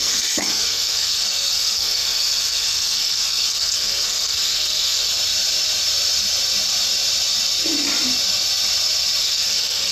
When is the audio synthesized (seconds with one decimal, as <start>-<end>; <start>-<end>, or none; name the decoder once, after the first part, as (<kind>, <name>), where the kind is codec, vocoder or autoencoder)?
0.0-5.1 (codec, SNAC); 9.2-9.9